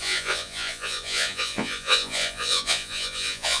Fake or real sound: fake